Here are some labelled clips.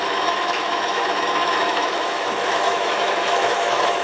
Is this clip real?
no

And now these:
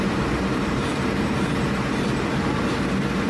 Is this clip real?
no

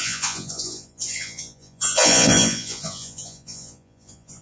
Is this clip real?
no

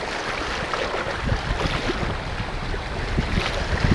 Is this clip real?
yes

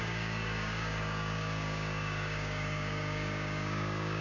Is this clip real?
no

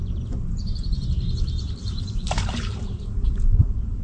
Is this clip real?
no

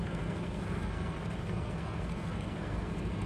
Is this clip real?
no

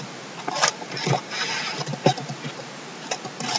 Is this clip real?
yes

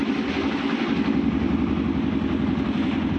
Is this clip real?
yes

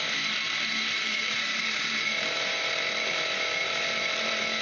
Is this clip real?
no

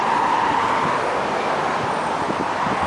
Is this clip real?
yes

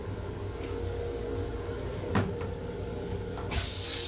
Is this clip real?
no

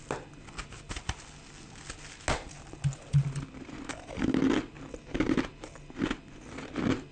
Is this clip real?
yes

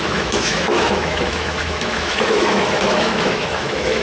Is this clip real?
no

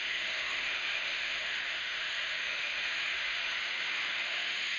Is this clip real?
no